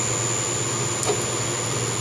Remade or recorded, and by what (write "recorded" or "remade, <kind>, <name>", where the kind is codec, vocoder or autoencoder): recorded